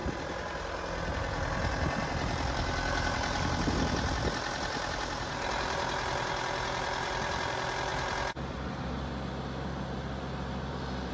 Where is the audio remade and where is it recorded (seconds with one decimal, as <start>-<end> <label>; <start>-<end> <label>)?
0.0-7.9 remade; 7.9-10.6 recorded; 10.6-11.1 remade